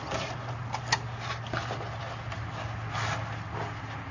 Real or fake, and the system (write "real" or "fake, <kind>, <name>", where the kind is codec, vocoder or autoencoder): real